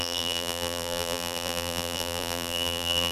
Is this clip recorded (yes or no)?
no